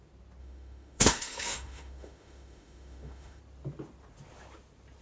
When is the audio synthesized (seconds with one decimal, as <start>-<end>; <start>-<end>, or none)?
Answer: 0.4-3.4

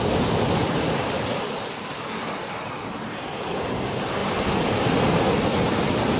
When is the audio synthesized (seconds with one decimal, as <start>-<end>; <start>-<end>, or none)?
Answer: none